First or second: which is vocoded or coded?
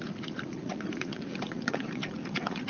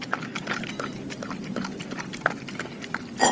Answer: first